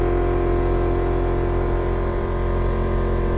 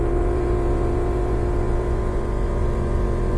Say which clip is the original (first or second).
first